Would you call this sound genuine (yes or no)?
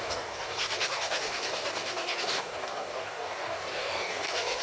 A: no